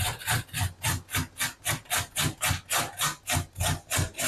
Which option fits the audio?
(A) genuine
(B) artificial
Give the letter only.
A